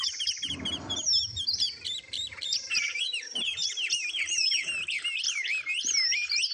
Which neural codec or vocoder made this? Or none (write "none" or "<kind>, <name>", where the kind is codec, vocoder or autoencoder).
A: vocoder, BigVGAN v2